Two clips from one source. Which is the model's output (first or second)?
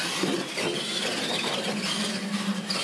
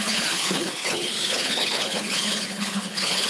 second